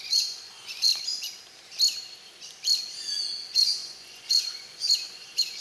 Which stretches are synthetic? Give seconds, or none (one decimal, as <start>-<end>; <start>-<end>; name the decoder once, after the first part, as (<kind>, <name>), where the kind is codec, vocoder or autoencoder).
0.0-0.9 (vocoder, Vocos); 3.3-5.6